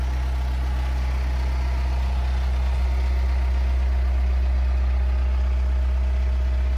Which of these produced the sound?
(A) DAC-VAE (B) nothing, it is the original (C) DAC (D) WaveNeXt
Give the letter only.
B